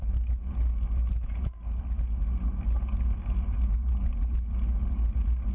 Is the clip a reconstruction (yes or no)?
no